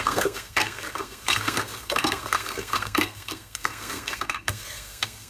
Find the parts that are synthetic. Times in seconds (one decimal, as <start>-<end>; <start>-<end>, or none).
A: 0.0-5.3